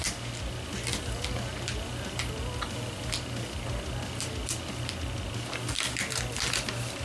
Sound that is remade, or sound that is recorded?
recorded